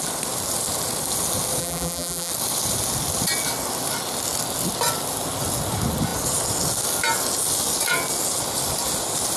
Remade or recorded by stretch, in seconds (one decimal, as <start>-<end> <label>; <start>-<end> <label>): 0.0-1.6 recorded; 1.6-2.3 remade; 2.3-9.4 recorded